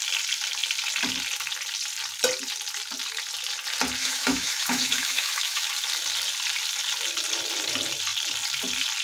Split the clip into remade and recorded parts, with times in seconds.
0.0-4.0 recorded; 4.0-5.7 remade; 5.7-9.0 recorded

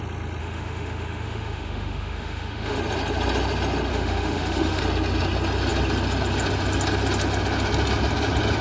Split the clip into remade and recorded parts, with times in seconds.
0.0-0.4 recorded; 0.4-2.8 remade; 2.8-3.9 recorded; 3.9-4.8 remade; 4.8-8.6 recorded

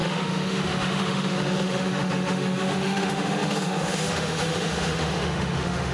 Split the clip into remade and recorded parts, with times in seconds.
0.0-5.9 remade

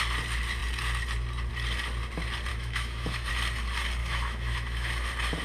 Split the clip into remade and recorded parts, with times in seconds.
0.0-2.5 recorded; 2.5-3.3 remade; 3.3-4.0 recorded; 4.0-4.9 remade; 4.9-5.4 recorded

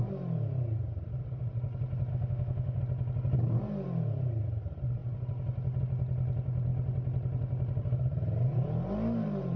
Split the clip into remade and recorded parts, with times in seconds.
0.0-2.1 recorded; 2.1-2.8 remade; 2.8-9.6 recorded

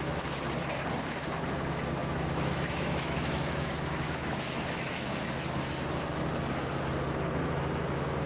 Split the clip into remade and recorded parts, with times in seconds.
0.0-2.0 recorded; 2.0-5.2 remade; 5.2-8.3 recorded